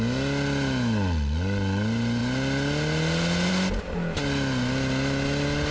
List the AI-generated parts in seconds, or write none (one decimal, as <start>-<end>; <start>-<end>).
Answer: none